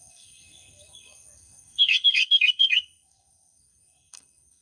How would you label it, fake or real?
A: fake